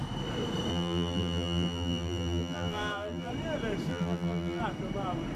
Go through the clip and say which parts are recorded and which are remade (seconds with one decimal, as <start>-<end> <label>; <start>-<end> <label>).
0.0-0.7 recorded; 0.7-3.3 remade; 3.3-3.9 recorded; 3.9-4.6 remade; 4.6-5.4 recorded